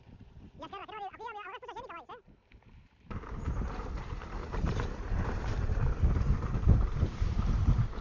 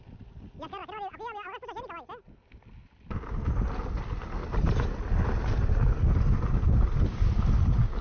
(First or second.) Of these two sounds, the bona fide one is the second